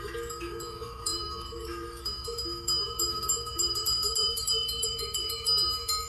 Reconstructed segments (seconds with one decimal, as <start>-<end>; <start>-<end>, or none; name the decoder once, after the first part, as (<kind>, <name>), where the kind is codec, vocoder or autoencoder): 0.0-6.1 (autoencoder, DAC-VAE)